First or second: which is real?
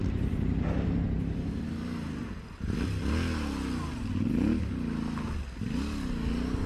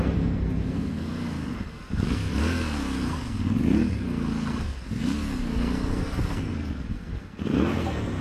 first